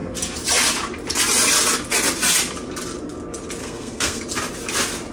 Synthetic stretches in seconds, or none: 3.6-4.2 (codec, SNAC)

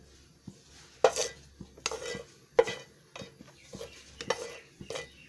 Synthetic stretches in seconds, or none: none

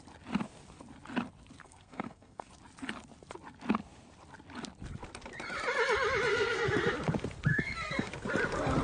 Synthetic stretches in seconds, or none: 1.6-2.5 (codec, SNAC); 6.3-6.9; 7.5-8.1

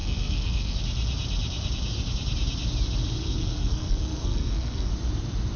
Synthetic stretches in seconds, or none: 0.0-0.8 (codec, SNAC); 3.3-4.9

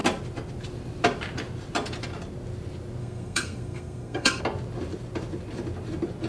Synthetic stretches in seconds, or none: 3.0-4.4 (codec, SNAC)

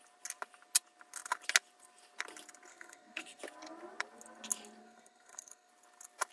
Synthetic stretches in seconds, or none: 2.7-3.4 (codec, SNAC); 4.8-5.7